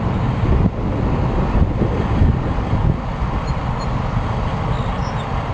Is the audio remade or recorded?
recorded